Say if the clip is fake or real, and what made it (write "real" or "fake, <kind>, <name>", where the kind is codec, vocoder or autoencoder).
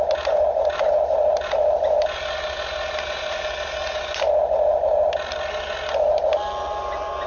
real